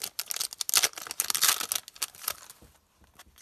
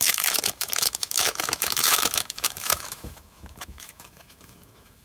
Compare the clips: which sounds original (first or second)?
first